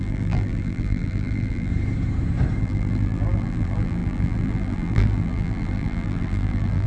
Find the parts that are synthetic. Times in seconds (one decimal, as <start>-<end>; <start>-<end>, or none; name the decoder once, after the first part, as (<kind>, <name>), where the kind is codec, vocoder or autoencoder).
0.0-1.7 (vocoder, BigVGAN v2); 2.6-6.9